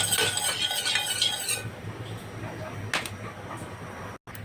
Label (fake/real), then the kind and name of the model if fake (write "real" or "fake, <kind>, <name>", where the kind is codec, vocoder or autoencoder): real